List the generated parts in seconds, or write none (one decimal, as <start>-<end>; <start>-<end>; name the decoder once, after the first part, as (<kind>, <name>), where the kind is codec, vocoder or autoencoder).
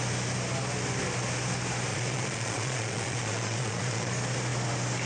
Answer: 1.9-4.1 (vocoder, Vocos)